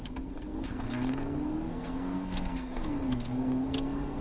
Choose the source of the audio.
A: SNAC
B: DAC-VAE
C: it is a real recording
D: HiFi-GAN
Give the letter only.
A